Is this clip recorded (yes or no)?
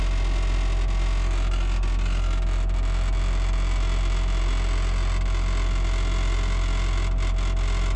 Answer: yes